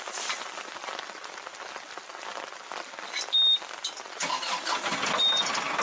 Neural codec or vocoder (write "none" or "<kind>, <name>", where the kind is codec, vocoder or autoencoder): none